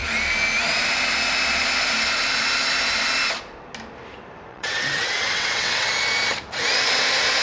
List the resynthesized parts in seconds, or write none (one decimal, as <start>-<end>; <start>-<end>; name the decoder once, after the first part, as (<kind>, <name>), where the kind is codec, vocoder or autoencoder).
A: 4.5-5.9 (vocoder, WaveNeXt)